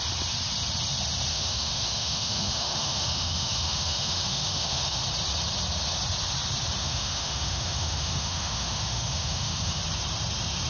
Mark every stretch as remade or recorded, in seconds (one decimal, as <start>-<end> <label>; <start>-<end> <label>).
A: 0.0-1.3 recorded; 1.3-5.0 remade; 5.0-6.8 recorded; 6.8-9.8 remade; 9.8-10.7 recorded